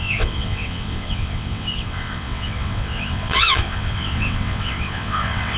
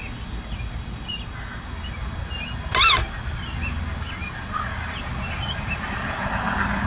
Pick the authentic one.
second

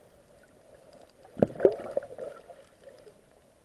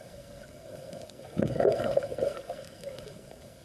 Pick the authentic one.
first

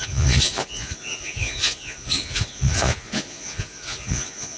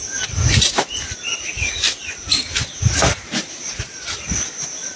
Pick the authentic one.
second